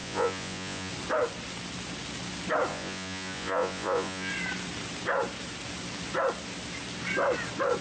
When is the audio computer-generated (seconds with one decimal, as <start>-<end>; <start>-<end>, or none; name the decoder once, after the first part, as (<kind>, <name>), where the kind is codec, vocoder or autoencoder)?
0.0-0.9 (vocoder, Vocos); 2.7-4.3